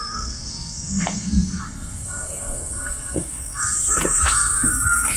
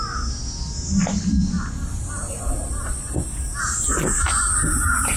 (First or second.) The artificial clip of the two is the first